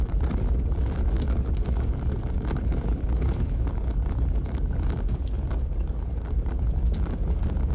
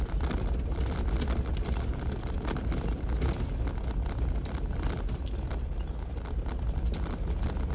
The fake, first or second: first